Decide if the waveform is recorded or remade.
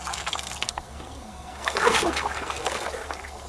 remade